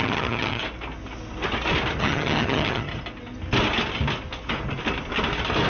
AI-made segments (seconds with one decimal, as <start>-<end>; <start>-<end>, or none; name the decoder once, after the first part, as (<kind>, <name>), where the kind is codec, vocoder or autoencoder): 0.0-0.6 (vocoder, HiFi-GAN); 2.0-2.9